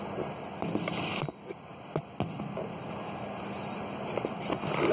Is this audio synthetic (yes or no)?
no